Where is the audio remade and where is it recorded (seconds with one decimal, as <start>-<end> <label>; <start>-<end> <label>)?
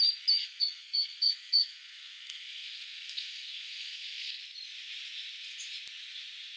0.0-0.4 recorded; 0.4-4.4 remade; 4.4-6.6 recorded